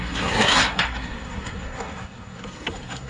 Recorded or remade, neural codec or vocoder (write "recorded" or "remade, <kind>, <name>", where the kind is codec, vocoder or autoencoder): remade, codec, SNAC